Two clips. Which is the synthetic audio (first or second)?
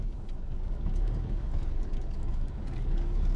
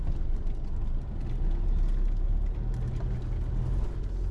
first